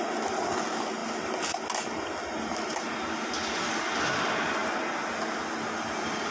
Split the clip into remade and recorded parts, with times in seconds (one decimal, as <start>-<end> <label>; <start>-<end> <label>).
0.0-6.3 recorded